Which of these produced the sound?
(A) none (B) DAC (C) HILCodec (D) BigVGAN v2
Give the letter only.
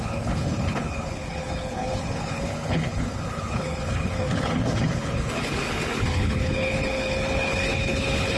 C